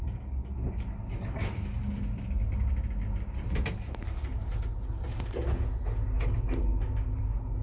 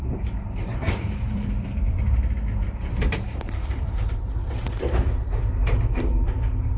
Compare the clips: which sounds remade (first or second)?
second